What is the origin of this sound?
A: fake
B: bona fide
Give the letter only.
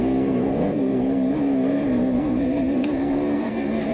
A